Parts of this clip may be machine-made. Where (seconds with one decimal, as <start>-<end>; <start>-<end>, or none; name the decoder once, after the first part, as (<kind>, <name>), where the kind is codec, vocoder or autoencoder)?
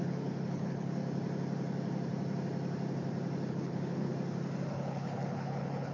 0.0-1.0 (codec, HILCodec); 3.5-4.1; 4.7-5.9